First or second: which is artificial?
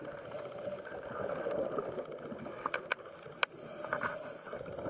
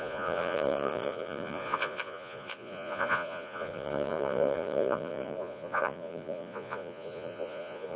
second